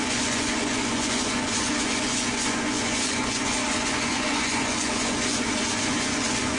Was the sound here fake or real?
fake